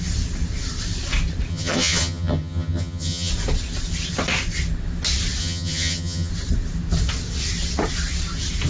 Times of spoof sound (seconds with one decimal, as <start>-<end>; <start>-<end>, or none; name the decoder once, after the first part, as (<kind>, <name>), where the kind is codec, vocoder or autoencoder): 1.5-3.3 (vocoder, HiFi-GAN); 5.4-6.3

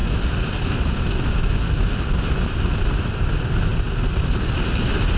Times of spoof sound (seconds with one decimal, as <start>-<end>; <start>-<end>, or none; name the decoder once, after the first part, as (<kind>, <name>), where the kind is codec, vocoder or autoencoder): none

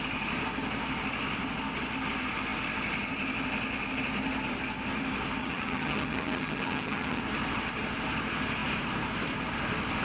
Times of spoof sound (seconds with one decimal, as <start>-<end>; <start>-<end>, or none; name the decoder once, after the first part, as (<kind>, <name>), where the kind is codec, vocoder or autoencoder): 5.4-7.2 (vocoder, HiFi-GAN)

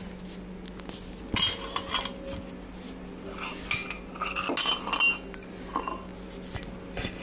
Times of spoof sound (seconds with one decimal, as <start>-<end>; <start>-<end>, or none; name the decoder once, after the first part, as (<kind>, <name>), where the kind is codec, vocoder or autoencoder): none

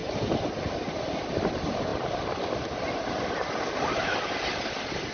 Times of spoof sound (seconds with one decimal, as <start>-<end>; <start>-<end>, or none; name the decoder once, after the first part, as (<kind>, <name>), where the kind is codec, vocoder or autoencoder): none